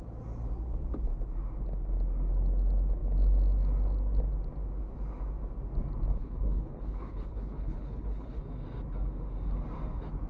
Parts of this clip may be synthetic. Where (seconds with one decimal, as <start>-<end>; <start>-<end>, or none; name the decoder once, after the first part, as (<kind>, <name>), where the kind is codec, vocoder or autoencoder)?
6.1-8.4 (codec, HILCodec)